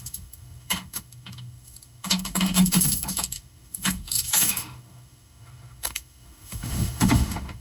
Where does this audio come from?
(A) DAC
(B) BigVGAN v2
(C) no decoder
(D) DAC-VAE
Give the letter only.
D